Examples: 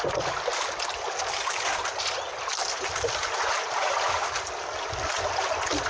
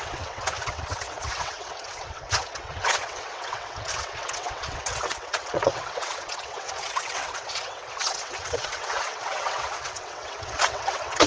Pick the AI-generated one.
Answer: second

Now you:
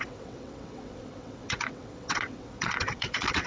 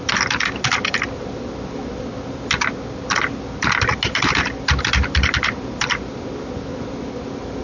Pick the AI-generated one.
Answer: first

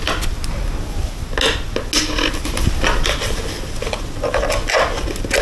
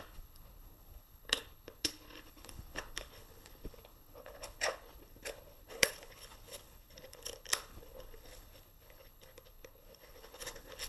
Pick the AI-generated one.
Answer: second